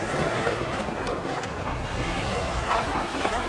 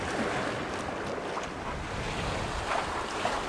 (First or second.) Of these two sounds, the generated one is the first